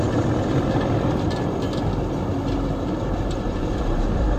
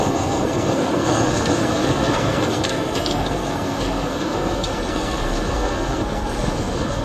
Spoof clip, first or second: second